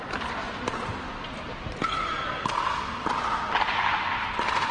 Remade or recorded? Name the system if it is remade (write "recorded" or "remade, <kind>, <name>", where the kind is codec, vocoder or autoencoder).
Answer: recorded